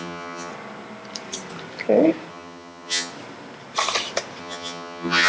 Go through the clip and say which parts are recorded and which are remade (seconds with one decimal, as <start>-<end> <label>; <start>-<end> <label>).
0.0-0.5 remade; 0.5-2.3 recorded; 2.3-3.1 remade; 3.1-4.4 recorded; 4.4-5.3 remade